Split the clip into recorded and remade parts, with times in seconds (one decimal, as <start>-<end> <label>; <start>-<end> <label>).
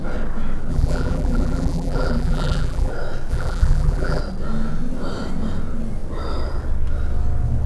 0.0-0.7 recorded; 0.7-2.9 remade; 2.9-3.3 recorded; 3.3-4.2 remade; 4.2-7.7 recorded